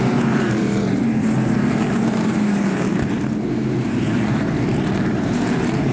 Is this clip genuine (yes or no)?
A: no